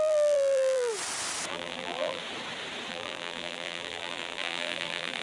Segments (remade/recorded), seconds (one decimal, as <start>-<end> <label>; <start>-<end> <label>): 0.0-0.9 remade; 0.9-1.5 recorded; 1.5-2.2 remade; 2.2-2.9 recorded; 2.9-5.2 remade